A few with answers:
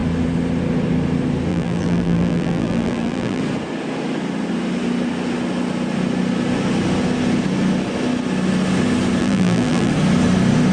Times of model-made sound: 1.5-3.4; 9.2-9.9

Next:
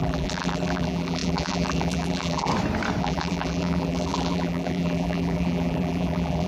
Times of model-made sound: 0.0-2.5; 3.0-6.5

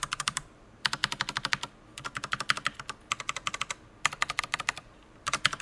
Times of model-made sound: 0.0-1.0; 4.4-5.6

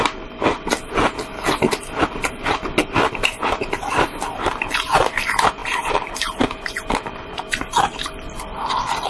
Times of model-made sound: none

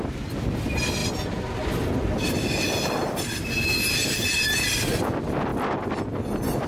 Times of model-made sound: 5.5-6.0

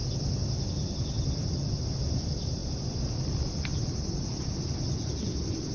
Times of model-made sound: 0.7-2.6; 3.3-5.7

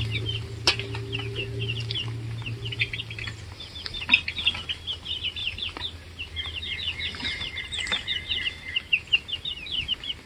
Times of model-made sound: 5.4-7.6